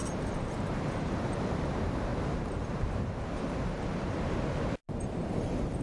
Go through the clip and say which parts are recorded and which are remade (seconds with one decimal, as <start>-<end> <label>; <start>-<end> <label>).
0.0-5.8 remade